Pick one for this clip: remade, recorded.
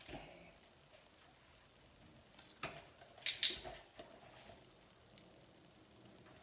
recorded